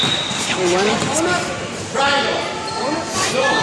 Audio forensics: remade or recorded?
remade